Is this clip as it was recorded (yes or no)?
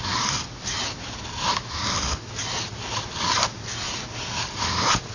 yes